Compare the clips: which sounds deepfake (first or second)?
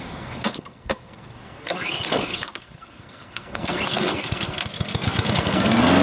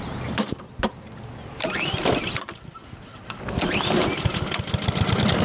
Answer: first